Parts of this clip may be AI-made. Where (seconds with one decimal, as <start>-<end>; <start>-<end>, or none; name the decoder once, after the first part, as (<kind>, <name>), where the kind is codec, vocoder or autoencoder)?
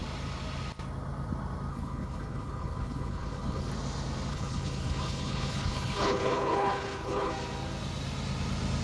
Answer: 1.7-3.7 (codec, HILCodec); 4.3-7.3